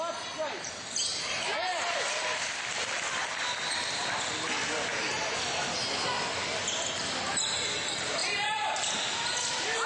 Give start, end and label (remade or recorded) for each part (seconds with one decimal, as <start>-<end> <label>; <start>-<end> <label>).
0.0-1.1 recorded; 1.1-2.5 remade; 2.5-4.9 recorded; 4.9-5.4 remade; 5.4-8.2 recorded; 8.2-8.9 remade; 8.9-9.9 recorded